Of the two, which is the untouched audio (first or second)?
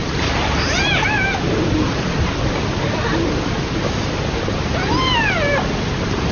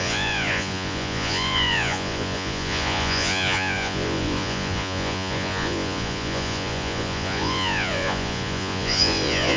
first